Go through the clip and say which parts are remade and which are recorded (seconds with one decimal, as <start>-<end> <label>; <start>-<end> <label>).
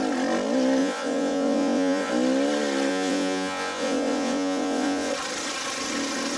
0.0-0.8 recorded; 0.8-2.1 remade; 2.1-2.9 recorded; 2.9-5.1 remade; 5.1-6.4 recorded